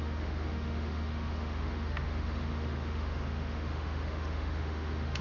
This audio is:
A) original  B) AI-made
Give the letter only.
B